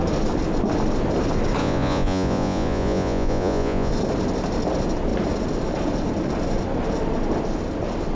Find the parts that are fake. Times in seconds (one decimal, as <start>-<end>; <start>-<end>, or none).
1.6-3.9